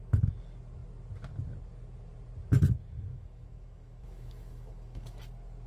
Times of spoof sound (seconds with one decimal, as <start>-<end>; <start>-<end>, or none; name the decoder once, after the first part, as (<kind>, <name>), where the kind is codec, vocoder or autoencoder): 3.1-5.2 (autoencoder, DAC-VAE)